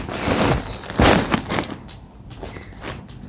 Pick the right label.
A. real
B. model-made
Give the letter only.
A